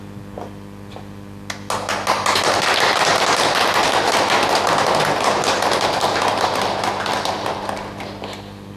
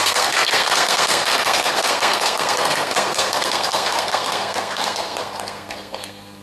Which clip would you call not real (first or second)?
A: second